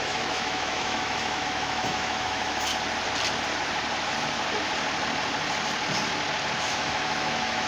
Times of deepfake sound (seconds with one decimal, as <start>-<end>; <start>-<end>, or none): 0.0-2.7; 6.6-7.7